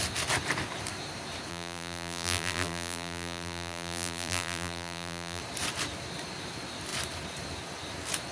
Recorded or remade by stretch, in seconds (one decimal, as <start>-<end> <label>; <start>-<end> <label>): 0.0-1.5 recorded; 1.5-5.4 remade; 5.4-8.3 recorded